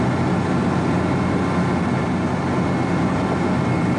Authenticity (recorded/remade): recorded